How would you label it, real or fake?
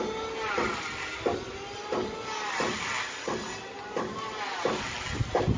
real